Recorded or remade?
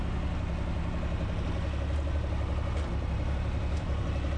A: recorded